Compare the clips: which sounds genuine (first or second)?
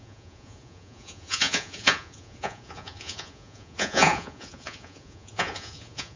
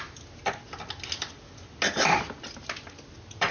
second